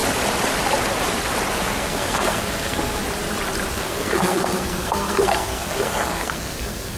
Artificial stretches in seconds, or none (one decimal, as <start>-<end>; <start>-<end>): 1.5-3.0; 3.7-7.0